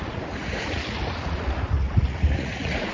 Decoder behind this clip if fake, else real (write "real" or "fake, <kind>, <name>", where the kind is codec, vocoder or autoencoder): fake, vocoder, Vocos